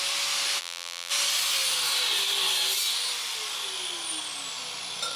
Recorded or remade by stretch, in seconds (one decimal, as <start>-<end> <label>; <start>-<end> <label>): 0.0-0.6 recorded; 0.6-1.1 remade; 1.1-5.2 recorded